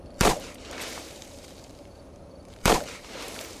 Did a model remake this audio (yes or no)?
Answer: yes